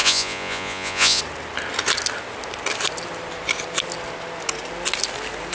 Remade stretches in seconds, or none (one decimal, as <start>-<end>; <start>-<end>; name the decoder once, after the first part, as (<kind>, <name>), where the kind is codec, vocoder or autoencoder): 0.0-1.2 (vocoder, Vocos)